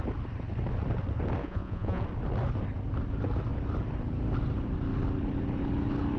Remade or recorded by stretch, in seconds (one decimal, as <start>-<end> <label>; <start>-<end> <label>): 0.0-1.4 recorded; 1.4-2.0 remade; 2.0-6.2 recorded